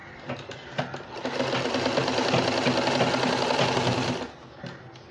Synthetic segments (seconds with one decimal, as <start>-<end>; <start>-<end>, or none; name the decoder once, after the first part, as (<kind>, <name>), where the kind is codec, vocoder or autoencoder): none